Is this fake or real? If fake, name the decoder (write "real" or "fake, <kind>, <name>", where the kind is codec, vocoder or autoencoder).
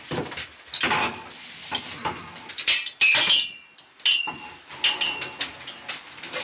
real